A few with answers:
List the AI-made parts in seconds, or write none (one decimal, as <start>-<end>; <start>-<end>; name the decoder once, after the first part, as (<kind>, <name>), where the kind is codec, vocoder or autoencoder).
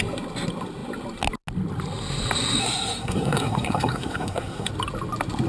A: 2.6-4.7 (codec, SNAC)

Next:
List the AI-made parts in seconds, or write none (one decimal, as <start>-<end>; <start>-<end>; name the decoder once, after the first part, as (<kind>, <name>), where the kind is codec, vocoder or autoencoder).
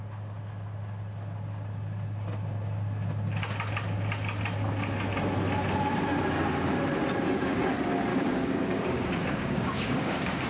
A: 8.1-10.5 (codec, DAC)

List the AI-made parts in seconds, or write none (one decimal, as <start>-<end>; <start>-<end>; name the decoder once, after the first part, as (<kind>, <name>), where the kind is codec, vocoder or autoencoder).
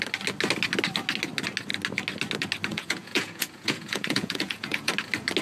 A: 2.7-4.9 (vocoder, Vocos)